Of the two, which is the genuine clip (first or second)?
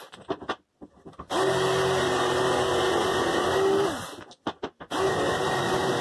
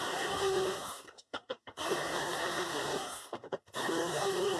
first